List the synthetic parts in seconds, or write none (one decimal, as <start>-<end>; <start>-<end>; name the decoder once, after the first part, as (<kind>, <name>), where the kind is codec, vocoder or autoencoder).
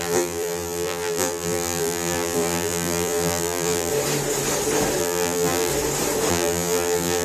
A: 0.0-3.9 (vocoder, BigVGAN v2); 5.0-5.7; 6.3-7.2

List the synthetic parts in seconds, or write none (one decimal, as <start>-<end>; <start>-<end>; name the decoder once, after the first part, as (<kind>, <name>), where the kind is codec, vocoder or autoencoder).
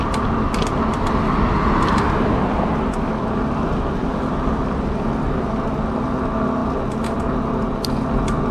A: none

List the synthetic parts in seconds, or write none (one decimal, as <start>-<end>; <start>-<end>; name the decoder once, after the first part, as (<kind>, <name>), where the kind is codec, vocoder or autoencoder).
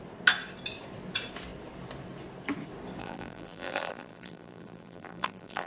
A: 3.0-5.7 (vocoder, BigVGAN v2)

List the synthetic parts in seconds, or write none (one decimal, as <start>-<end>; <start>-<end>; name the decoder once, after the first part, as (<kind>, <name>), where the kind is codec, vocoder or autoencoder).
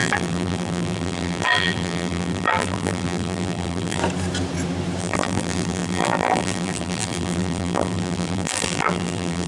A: 0.0-4.0 (vocoder, BigVGAN v2); 5.0-9.5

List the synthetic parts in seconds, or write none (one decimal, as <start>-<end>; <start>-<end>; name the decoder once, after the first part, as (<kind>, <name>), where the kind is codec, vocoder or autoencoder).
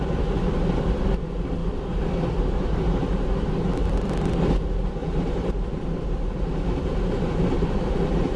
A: 5.0-7.9 (vocoder, BigVGAN v2)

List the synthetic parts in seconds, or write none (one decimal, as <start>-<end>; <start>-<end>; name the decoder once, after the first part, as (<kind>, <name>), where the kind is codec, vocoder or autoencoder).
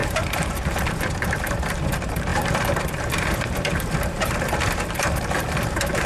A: 0.0-6.1 (vocoder, BigVGAN v2)